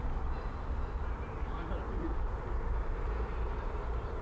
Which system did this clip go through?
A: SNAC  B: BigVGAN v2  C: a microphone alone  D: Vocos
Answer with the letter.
C